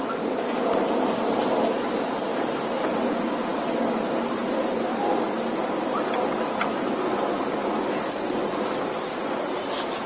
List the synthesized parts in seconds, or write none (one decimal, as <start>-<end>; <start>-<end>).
none

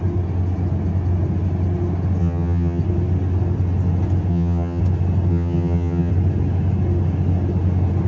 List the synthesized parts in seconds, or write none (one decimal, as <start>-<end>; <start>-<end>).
2.2-2.8; 4.3-4.8; 5.3-6.1

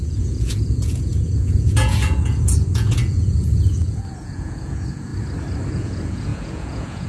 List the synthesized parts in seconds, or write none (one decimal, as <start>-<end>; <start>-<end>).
0.0-5.1; 5.7-7.1